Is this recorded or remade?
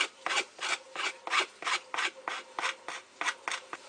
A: recorded